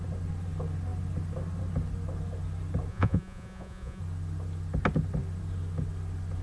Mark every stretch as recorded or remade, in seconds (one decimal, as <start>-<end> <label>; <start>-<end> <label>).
0.0-2.9 recorded; 2.9-4.0 remade; 4.0-6.4 recorded